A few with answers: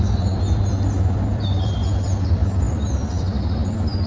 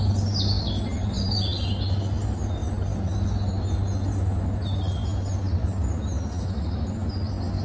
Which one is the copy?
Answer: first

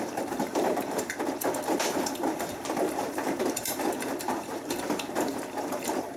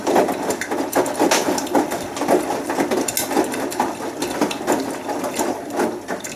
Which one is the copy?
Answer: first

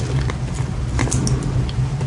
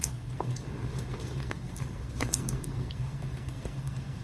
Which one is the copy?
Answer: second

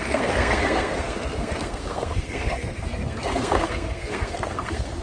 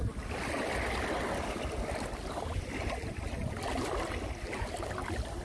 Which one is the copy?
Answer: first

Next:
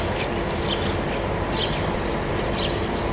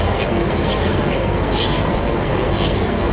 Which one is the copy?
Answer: second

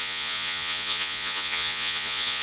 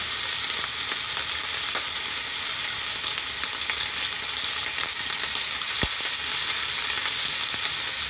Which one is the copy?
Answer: first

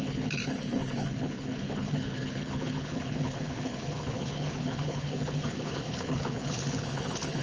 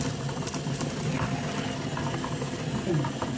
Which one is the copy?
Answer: first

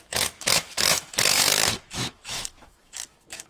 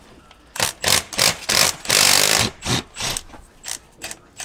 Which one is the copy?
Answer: first